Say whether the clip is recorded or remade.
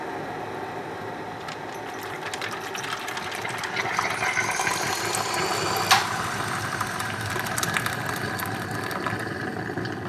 recorded